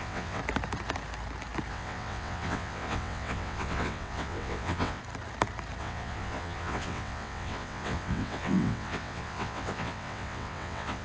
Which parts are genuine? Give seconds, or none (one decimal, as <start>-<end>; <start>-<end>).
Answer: 0.4-1.7; 5.0-5.8